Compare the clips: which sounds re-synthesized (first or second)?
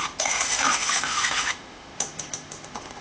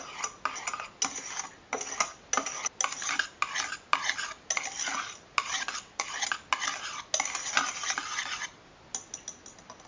first